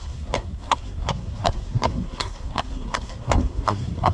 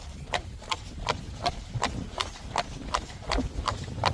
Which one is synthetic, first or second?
first